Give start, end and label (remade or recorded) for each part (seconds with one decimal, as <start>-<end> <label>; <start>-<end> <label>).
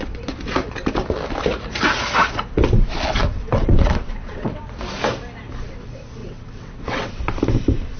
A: 0.0-3.2 recorded; 3.2-4.6 remade; 4.6-6.2 recorded; 6.2-7.2 remade; 7.2-8.0 recorded